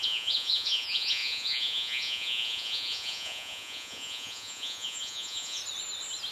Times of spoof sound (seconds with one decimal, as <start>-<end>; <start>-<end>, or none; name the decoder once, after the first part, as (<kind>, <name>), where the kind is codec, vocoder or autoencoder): 0.0-5.6 (vocoder, Vocos)